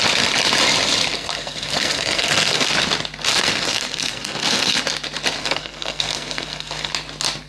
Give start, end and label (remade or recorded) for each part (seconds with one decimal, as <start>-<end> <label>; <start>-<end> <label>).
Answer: 0.0-1.1 recorded; 1.1-2.7 remade; 2.7-3.3 recorded; 3.3-4.8 remade; 4.8-5.4 recorded; 5.4-6.9 remade; 6.9-7.5 recorded

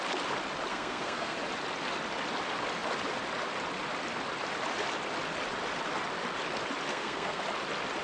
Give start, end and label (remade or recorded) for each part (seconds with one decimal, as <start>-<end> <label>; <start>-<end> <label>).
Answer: 0.0-0.7 recorded; 0.7-1.4 remade; 1.4-6.9 recorded; 6.9-7.4 remade; 7.4-8.0 recorded

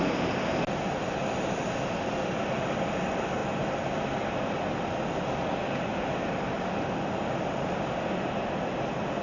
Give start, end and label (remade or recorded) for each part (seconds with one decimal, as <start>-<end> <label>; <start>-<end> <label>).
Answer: 0.0-9.2 recorded

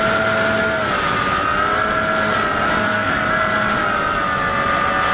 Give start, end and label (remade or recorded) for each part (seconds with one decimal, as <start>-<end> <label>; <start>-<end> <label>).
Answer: 0.0-2.8 recorded; 2.8-3.3 remade; 3.3-5.1 recorded

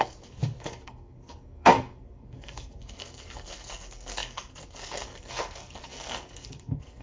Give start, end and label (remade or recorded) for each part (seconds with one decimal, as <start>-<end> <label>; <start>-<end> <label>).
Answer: 0.0-7.0 remade

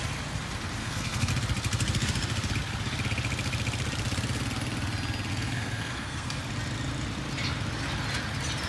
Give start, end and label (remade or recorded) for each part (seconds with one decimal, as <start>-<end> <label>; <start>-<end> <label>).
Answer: 0.0-0.8 recorded; 0.8-1.3 remade; 1.3-5.3 recorded; 5.3-6.4 remade; 6.4-8.7 recorded